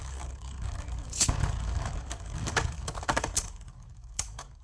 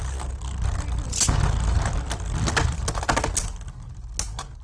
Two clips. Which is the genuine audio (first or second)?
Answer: second